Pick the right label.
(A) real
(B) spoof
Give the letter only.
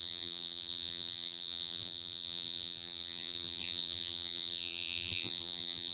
B